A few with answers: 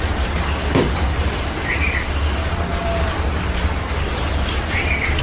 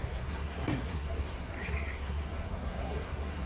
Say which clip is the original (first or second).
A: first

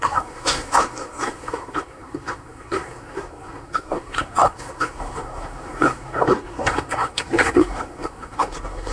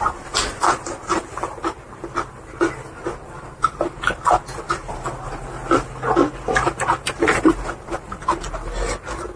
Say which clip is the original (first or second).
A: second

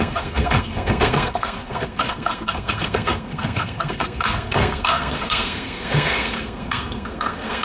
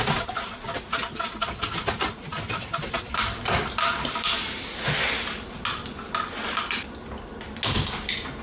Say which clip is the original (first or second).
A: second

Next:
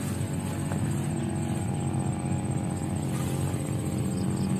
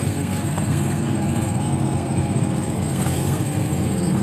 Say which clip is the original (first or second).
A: first